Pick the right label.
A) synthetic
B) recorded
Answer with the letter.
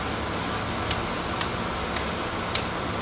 B